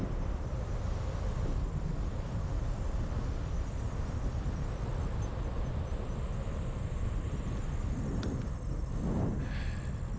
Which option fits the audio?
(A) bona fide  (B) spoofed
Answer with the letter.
A